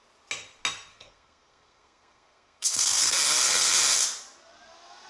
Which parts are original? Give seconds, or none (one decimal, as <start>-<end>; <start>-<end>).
0.0-0.9; 3.7-5.1